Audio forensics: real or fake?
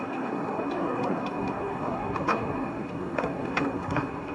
fake